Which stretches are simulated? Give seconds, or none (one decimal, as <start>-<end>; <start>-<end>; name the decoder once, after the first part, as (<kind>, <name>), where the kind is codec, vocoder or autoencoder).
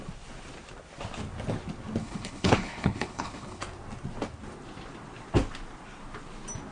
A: 2.0-3.6 (codec, HILCodec)